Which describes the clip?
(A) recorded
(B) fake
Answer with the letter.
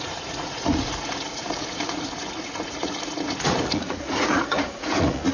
B